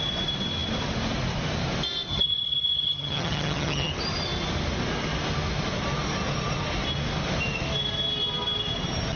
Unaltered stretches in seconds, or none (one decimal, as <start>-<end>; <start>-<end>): 0.0-2.1; 3.9-9.2